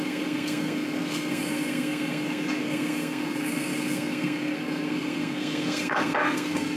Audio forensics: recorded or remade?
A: remade